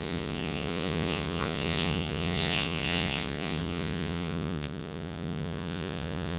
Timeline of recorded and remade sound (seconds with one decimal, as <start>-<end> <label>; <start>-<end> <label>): 0.0-6.4 remade